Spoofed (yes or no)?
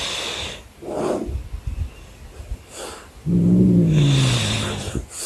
no